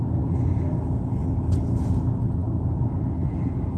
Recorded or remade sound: recorded